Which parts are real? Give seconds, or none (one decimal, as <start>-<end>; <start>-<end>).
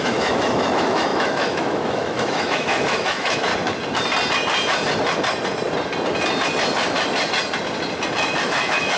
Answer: 3.5-8.4